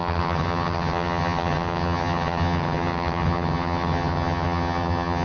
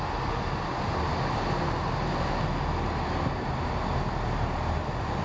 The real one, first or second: second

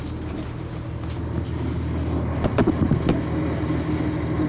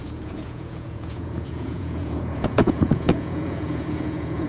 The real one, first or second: first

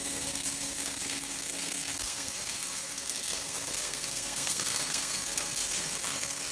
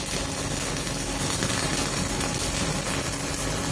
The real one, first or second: second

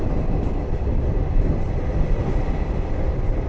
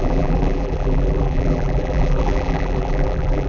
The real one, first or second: first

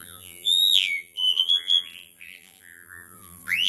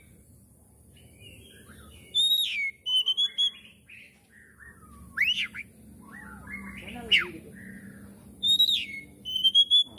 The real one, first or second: second